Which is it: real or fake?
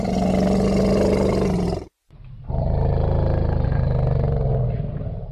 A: real